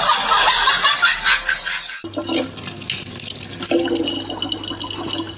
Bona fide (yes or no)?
yes